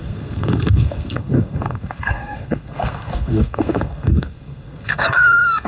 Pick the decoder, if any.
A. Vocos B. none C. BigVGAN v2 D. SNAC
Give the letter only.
D